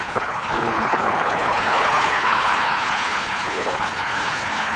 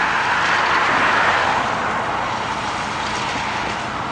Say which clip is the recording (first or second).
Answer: second